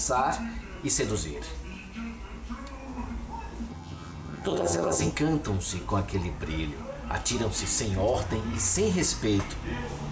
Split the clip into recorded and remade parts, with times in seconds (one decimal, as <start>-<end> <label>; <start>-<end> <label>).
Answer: 0.0-3.7 recorded; 3.7-5.1 remade; 5.1-10.1 recorded